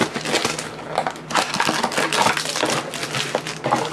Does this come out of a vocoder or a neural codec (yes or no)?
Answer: no